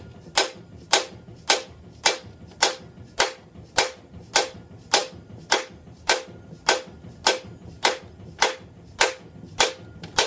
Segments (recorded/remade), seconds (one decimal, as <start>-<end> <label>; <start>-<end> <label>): 0.0-10.3 recorded